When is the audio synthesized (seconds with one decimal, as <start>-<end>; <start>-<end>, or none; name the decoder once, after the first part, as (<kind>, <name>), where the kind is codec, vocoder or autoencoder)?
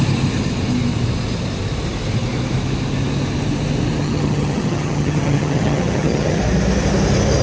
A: 4.0-6.4 (vocoder, HiFi-GAN)